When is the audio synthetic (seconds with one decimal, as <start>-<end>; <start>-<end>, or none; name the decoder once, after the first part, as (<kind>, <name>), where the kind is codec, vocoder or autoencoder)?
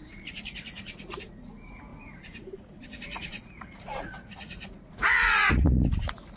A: 0.0-6.4 (vocoder, Vocos)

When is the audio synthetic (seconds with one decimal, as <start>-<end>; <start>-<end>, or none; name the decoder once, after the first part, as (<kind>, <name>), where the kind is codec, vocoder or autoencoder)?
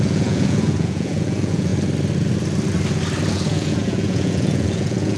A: 0.0-1.7 (vocoder, Vocos); 3.3-5.2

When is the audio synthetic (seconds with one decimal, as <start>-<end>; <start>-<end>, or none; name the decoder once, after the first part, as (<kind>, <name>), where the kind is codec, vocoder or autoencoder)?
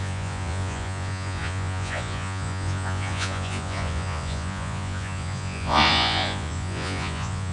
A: 0.0-7.5 (vocoder, Vocos)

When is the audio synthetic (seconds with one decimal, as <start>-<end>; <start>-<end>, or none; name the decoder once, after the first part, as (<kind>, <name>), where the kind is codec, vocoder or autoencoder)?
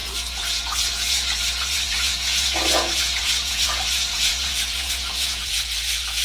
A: 0.0-6.2 (vocoder, Vocos)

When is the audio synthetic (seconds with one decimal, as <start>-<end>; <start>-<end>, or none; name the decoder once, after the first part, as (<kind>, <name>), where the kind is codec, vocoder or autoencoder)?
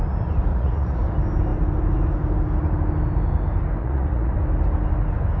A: 0.5-1.0 (vocoder, Vocos); 3.8-4.3